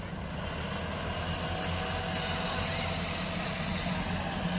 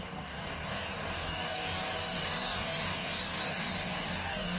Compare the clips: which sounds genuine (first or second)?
first